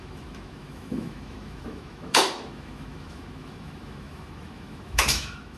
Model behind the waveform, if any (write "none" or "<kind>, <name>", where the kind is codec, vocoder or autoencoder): autoencoder, DAC-VAE